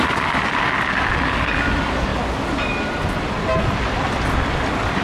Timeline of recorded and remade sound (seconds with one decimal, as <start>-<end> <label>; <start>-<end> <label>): 0.0-5.0 recorded